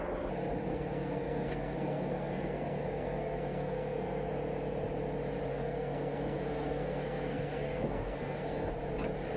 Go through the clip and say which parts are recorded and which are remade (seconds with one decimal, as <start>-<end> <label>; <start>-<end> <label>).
0.0-0.7 recorded; 0.7-4.3 remade; 4.3-5.5 recorded; 5.5-8.7 remade; 8.7-9.4 recorded